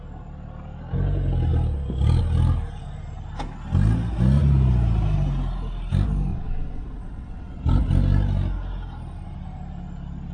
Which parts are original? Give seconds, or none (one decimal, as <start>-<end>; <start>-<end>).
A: 0.0-6.3; 7.6-10.3